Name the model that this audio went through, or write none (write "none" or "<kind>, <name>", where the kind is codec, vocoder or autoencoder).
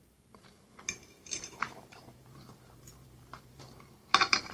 vocoder, BigVGAN v2